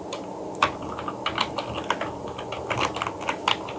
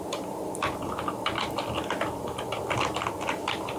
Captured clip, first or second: first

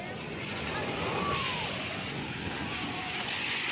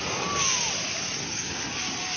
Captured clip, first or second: second